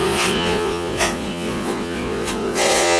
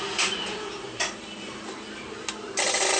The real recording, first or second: second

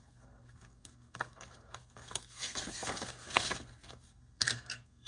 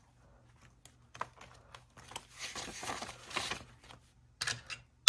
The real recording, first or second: second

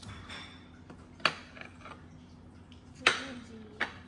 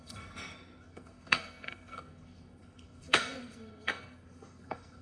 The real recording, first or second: first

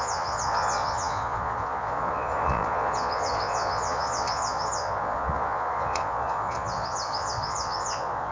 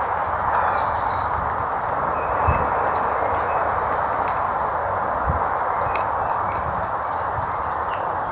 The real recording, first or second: second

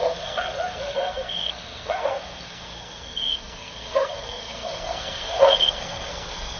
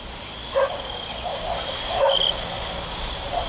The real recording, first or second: second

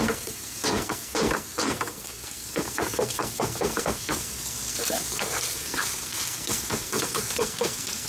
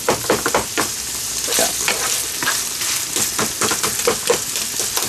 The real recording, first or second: second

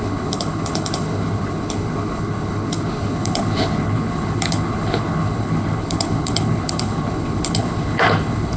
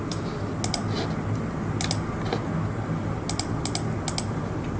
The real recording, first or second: second